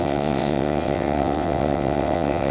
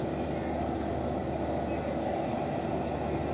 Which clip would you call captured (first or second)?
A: second